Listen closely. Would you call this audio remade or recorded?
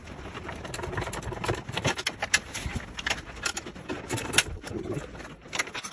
recorded